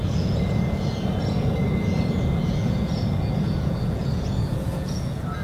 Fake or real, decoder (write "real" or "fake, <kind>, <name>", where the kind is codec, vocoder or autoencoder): fake, vocoder, Vocos